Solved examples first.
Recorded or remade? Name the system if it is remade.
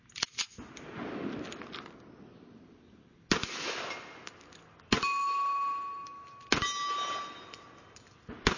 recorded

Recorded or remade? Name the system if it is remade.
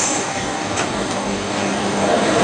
remade, codec, DAC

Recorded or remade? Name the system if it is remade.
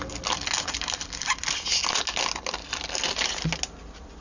recorded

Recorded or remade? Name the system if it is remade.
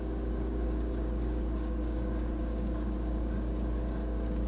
remade, codec, DAC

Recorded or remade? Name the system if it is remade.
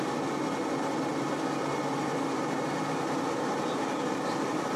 recorded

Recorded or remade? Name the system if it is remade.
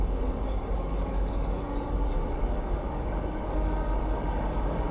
remade, codec, DAC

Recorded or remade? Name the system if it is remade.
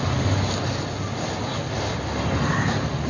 recorded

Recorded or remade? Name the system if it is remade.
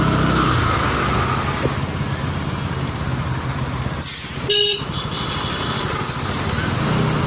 recorded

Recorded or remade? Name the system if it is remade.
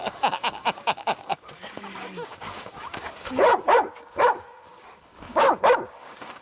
remade, codec, DAC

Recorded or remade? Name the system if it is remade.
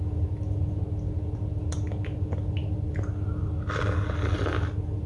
recorded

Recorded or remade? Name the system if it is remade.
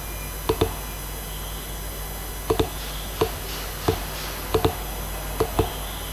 recorded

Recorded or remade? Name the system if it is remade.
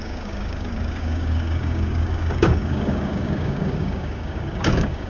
remade, codec, DAC